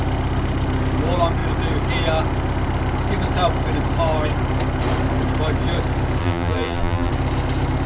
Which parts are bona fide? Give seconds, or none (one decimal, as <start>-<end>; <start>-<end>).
0.0-6.2; 7.1-7.9